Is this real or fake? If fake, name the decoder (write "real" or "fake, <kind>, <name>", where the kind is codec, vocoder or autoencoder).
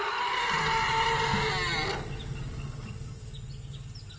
real